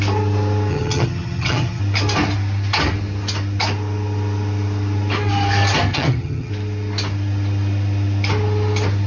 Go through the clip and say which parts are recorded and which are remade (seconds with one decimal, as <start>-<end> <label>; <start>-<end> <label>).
0.0-0.7 recorded; 0.7-1.8 remade; 1.8-5.9 recorded; 5.9-6.5 remade; 6.5-9.1 recorded